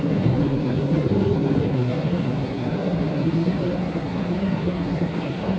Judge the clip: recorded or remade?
remade